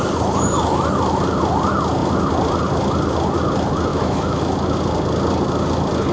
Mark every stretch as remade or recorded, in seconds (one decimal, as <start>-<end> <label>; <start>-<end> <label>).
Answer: 0.0-3.9 recorded; 3.9-4.4 remade; 4.4-6.1 recorded